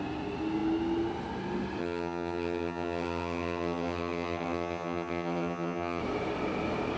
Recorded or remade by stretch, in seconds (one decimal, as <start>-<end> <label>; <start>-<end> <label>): 0.0-1.8 recorded; 1.8-6.0 remade; 6.0-7.0 recorded